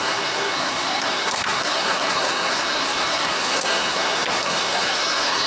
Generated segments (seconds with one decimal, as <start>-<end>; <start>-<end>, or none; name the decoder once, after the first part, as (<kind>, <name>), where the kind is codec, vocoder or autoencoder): 0.0-5.5 (codec, SNAC)